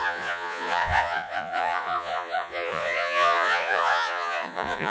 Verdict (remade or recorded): remade